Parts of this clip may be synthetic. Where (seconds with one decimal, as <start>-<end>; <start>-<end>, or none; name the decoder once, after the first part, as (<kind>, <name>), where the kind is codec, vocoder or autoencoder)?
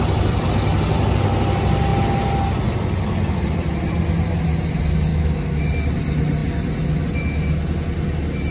5.1-5.6 (autoencoder, DAC-VAE)